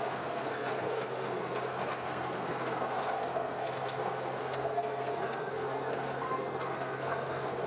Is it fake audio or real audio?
fake